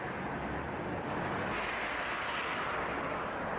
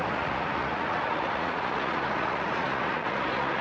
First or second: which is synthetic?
second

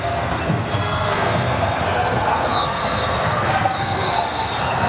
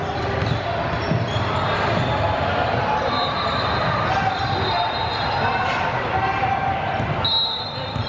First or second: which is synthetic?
first